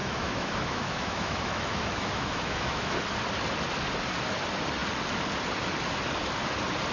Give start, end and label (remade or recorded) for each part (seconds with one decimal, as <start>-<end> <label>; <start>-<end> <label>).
0.0-2.9 remade; 2.9-6.9 recorded